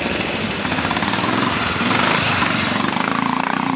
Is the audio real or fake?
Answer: fake